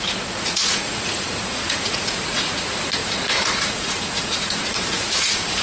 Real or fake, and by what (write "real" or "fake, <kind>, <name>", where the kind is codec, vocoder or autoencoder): fake, vocoder, Vocos